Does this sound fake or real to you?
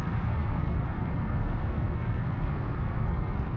fake